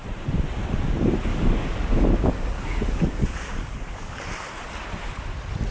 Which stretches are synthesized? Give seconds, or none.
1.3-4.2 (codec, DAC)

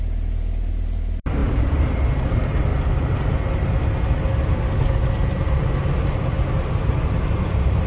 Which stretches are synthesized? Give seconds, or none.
0.0-2.7 (vocoder, BigVGAN v2); 6.0-7.9

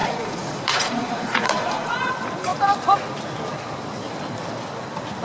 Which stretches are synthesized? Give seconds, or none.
0.0-2.1 (vocoder, Vocos)

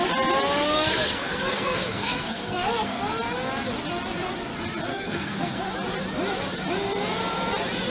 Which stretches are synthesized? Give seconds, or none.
0.6-3.0 (codec, SNAC); 4.9-5.6